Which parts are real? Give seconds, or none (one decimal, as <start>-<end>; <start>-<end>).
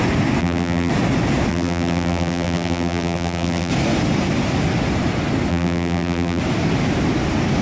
0.0-0.4; 0.9-1.5; 3.7-5.5; 6.4-7.6